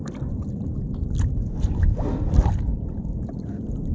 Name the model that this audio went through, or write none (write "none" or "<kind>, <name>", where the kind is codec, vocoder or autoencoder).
none